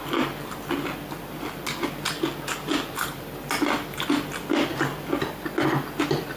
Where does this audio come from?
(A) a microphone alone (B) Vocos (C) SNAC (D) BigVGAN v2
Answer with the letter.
A